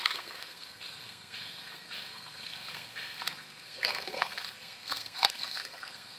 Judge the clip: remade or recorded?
remade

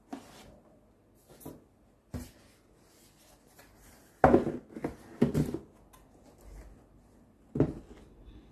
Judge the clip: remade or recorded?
recorded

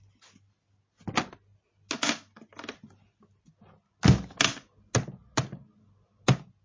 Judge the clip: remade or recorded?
recorded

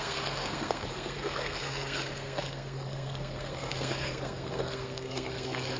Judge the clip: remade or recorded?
remade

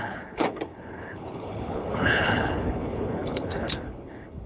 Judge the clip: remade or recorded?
remade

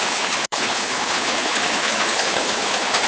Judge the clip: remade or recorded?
remade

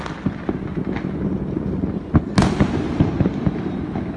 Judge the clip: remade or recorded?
recorded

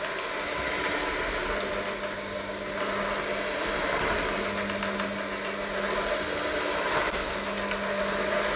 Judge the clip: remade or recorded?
recorded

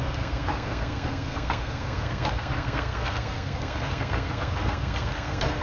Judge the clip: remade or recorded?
remade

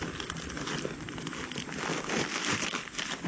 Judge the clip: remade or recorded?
recorded